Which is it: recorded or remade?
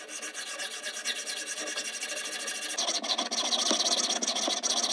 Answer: recorded